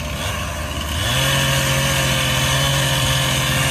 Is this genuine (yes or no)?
yes